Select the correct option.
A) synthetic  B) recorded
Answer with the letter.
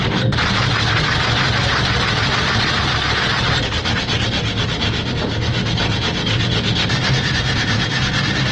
B